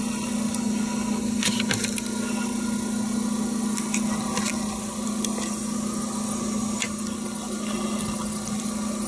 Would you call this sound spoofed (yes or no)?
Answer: no